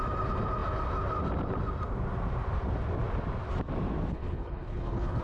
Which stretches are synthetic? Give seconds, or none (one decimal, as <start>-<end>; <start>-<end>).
4.1-5.2